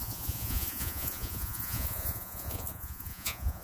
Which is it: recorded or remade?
remade